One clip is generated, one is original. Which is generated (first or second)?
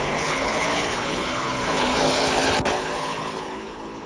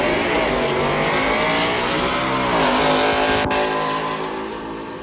first